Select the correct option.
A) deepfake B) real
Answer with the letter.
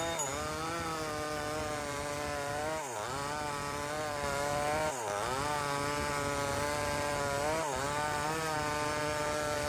B